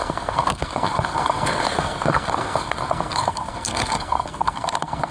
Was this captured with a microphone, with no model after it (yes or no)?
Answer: no